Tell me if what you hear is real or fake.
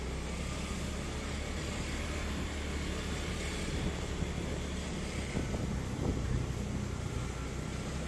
real